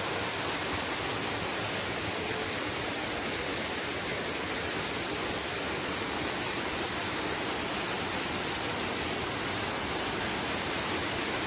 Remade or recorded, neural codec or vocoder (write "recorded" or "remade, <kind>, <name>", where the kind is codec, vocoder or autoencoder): recorded